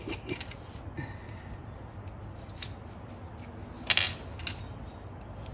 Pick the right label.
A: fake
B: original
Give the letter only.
B